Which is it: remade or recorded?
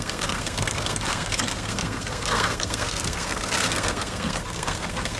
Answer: remade